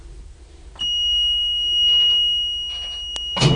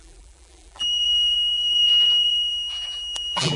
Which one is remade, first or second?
second